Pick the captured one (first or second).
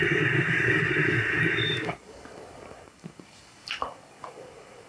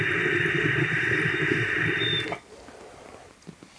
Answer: second